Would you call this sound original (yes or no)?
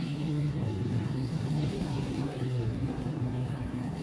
no